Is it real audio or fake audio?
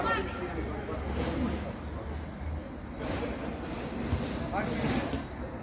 real